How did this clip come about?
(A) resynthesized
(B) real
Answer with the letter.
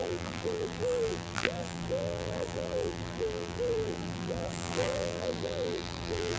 A